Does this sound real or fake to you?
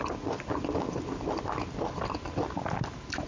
real